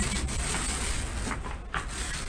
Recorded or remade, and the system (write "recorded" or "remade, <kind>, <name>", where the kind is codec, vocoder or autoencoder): recorded